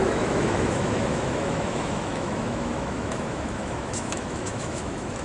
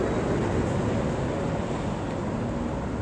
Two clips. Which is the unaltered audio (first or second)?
second